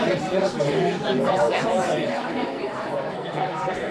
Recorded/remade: remade